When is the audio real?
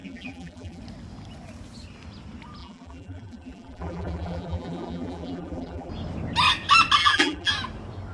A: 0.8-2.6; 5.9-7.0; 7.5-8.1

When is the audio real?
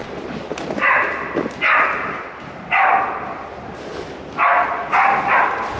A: 3.5-5.8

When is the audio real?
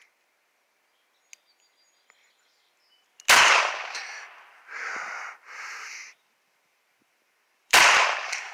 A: 0.0-6.0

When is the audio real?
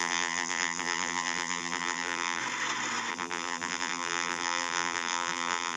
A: 2.4-3.1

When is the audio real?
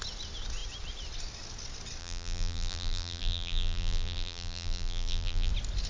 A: 0.0-2.0; 5.5-5.9